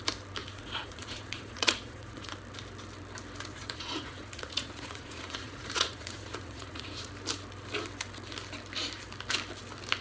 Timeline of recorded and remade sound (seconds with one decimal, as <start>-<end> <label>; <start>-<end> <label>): 0.0-0.4 recorded; 0.4-2.3 remade; 2.3-3.5 recorded; 3.5-7.1 remade; 7.1-10.0 recorded